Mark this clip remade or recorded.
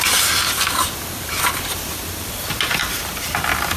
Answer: remade